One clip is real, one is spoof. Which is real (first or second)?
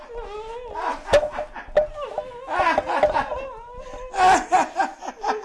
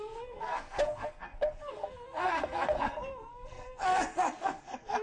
first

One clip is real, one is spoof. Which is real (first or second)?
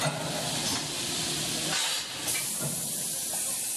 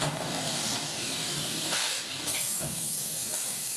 first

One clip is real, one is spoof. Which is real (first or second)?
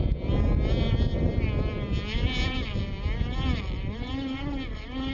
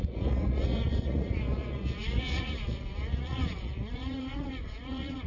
first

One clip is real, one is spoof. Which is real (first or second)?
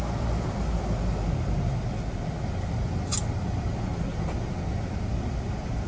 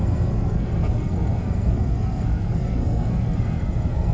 first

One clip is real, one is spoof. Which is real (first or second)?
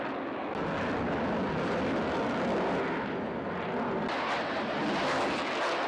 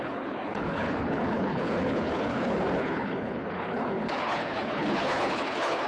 first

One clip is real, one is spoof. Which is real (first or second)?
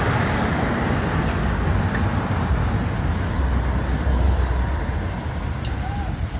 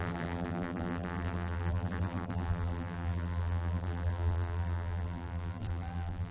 first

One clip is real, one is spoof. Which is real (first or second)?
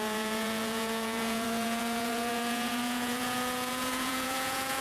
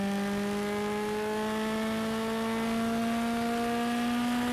second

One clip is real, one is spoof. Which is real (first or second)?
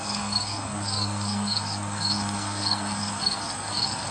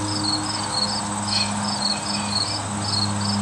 second